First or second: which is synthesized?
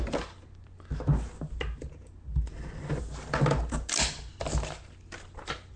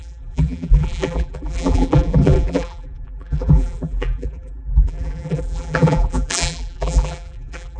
second